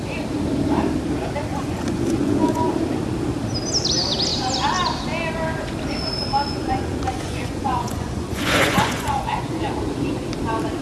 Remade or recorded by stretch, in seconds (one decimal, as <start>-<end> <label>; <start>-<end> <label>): 0.0-1.5 recorded; 1.5-2.6 remade; 2.6-6.5 recorded; 6.5-9.7 remade; 9.7-10.8 recorded